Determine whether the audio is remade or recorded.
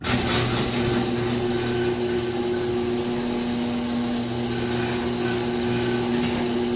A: recorded